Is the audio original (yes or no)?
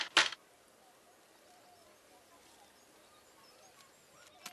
yes